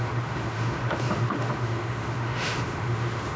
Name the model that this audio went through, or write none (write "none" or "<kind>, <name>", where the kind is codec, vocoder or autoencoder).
autoencoder, DAC-VAE